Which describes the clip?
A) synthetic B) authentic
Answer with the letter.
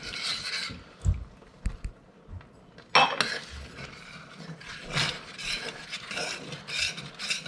B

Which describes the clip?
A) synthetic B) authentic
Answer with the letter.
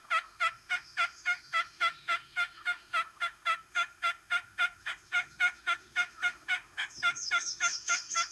A